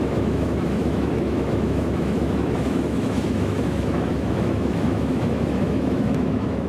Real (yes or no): no